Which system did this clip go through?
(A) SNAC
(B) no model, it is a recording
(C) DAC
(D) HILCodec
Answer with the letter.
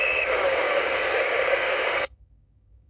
C